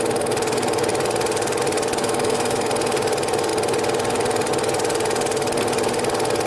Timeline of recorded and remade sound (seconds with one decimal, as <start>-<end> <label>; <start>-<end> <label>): 0.0-2.0 recorded; 2.0-2.7 remade; 2.7-6.5 recorded